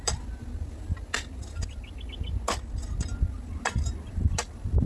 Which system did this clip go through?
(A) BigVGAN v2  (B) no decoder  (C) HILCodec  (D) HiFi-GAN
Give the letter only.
B